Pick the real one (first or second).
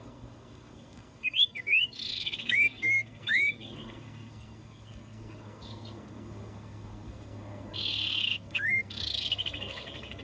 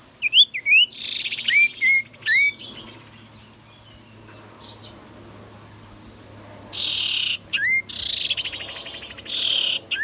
second